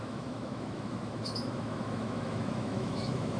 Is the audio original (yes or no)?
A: no